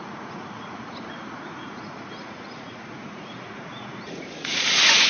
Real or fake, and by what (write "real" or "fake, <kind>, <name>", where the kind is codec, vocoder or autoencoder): fake, vocoder, Vocos